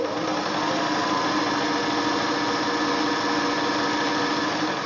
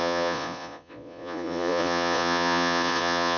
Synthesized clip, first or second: second